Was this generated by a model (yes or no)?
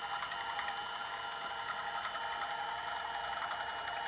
no